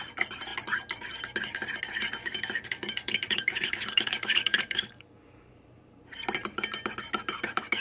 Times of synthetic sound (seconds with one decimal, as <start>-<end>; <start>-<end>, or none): 2.2-5.5

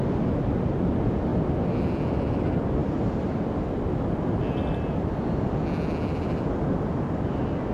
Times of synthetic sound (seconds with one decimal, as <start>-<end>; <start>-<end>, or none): none

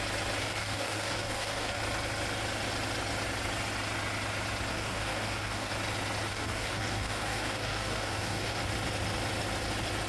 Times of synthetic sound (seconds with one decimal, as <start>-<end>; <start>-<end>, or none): 0.4-1.8; 4.7-5.7; 6.3-8.6

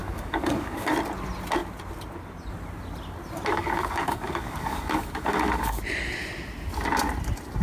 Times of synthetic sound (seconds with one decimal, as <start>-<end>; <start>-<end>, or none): 0.0-0.9; 3.5-5.8